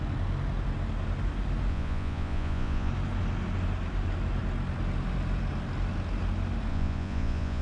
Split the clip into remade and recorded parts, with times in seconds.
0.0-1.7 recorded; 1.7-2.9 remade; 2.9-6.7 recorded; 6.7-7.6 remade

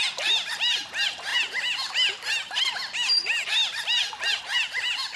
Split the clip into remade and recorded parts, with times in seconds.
0.0-5.2 recorded

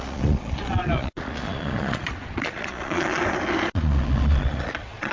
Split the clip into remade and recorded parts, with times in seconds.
0.0-3.2 remade; 3.2-3.7 recorded; 3.7-5.1 remade

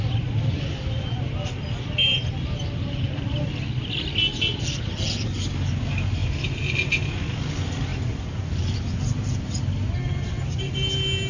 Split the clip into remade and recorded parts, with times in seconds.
0.0-11.3 recorded

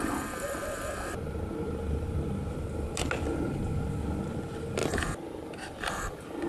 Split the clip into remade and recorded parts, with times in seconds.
0.0-6.5 recorded

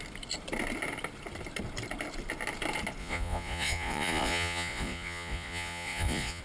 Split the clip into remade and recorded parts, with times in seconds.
0.0-3.0 recorded; 3.0-6.4 remade